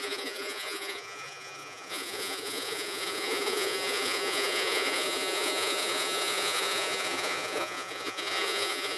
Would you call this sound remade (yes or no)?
yes